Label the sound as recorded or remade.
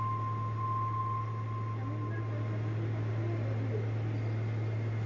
recorded